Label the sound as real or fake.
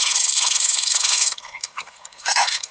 fake